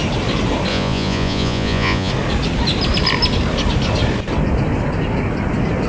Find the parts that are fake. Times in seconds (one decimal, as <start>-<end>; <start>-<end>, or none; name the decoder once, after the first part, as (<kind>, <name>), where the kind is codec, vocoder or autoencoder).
0.7-2.1 (vocoder, Vocos)